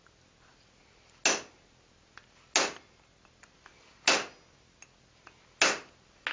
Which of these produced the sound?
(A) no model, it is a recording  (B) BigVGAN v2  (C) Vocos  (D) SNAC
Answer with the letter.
A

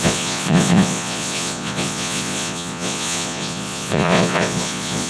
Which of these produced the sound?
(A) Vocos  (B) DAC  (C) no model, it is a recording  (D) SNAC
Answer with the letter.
A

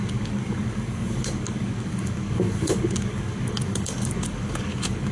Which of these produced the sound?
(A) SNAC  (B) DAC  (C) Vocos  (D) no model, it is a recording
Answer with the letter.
B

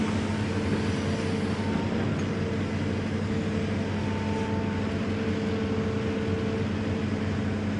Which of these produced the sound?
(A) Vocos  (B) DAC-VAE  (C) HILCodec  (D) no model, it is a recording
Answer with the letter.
D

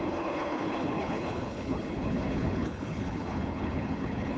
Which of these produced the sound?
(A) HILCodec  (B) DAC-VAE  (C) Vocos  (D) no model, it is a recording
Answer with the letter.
A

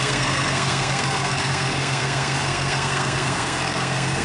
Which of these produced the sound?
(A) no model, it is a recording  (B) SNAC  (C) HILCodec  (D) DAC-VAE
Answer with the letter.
B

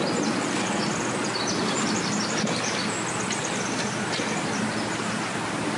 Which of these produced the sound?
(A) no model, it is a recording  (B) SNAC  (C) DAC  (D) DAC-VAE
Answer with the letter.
A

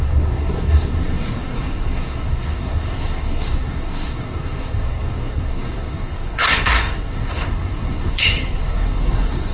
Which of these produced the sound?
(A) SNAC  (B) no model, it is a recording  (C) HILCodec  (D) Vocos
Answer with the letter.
A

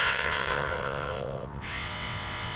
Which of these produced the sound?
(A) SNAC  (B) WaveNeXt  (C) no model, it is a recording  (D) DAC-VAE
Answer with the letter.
B